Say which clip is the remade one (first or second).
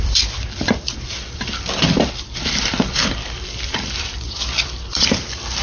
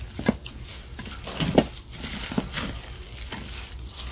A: first